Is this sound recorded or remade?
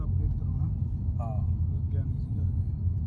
recorded